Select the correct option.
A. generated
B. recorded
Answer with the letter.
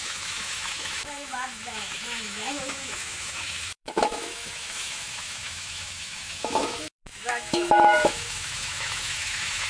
A